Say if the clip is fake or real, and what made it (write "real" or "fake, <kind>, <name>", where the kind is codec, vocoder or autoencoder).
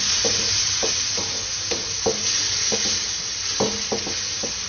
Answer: real